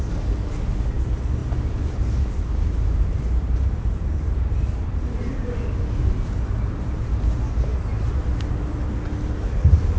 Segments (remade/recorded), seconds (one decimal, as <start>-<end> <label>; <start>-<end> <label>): 0.0-1.4 recorded; 1.4-5.6 remade; 5.6-10.0 recorded